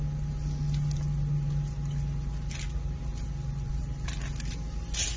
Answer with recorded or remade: recorded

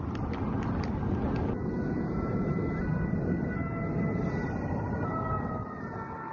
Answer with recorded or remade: recorded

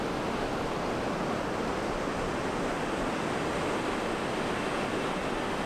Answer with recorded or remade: recorded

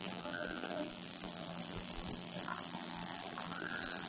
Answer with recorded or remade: remade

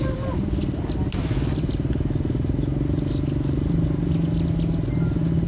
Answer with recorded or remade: recorded